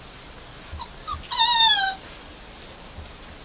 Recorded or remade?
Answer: recorded